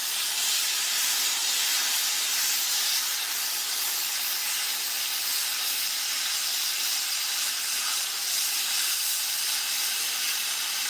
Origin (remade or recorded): remade